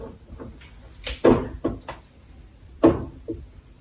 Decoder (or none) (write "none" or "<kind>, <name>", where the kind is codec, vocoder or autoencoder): none